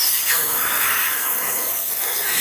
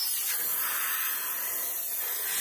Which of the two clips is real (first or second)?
second